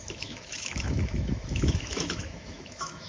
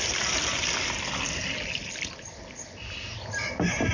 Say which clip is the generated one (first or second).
first